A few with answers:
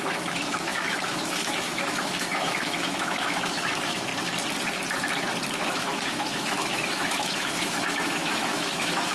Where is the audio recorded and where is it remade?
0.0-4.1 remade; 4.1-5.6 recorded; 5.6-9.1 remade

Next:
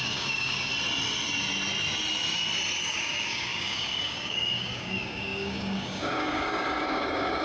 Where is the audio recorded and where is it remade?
0.0-0.7 remade; 0.7-2.8 recorded; 2.8-7.4 remade

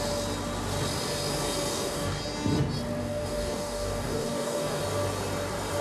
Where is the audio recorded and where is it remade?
0.0-1.7 recorded; 1.7-2.2 remade; 2.2-3.0 recorded; 3.0-4.8 remade; 4.8-5.8 recorded

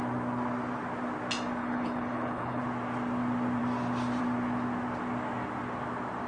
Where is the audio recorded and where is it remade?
0.0-1.6 recorded; 1.6-2.6 remade; 2.6-6.3 recorded

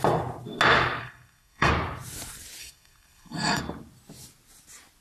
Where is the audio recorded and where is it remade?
0.0-1.0 recorded; 1.0-1.7 remade; 1.7-2.6 recorded; 2.6-3.6 remade; 3.6-5.0 recorded

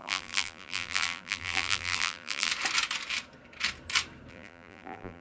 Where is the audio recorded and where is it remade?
0.0-2.5 remade; 2.5-4.3 recorded; 4.3-5.2 remade

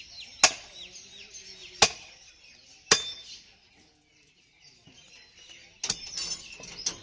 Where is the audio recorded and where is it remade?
0.0-7.0 recorded

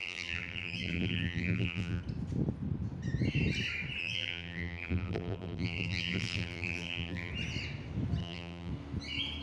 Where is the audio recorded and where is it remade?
0.0-2.0 remade; 2.0-4.0 recorded; 4.0-7.3 remade; 7.3-8.2 recorded; 8.2-8.7 remade; 8.7-9.4 recorded